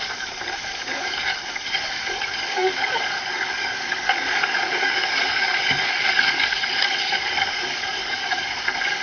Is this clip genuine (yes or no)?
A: no